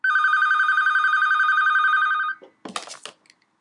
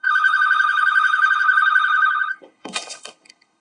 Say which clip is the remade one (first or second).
second